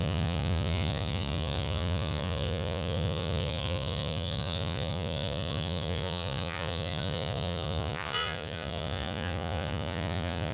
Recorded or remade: remade